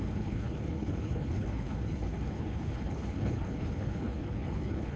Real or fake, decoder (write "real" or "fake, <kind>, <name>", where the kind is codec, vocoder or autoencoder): fake, codec, HILCodec